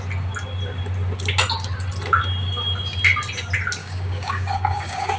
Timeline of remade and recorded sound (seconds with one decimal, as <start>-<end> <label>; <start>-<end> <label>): 0.0-3.8 recorded; 3.8-5.2 remade